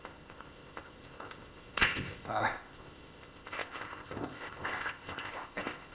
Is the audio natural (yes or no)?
no